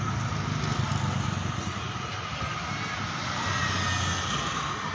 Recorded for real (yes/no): yes